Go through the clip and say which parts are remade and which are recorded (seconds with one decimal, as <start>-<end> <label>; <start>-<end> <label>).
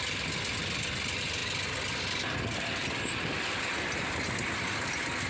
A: 0.0-5.3 recorded